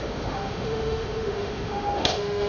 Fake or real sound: fake